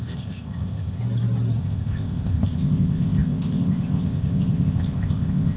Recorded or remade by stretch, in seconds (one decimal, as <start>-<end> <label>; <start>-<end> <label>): 0.0-1.0 remade; 1.0-1.6 recorded; 1.6-5.6 remade